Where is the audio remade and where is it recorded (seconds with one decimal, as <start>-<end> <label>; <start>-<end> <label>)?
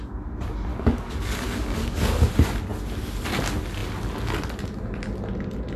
0.0-0.7 recorded; 0.7-2.3 remade; 2.3-5.8 recorded